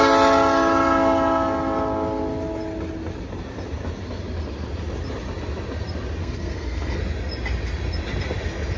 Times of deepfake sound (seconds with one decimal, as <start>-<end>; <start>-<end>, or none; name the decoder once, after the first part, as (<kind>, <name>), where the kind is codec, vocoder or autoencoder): 6.2-7.0 (codec, SNAC)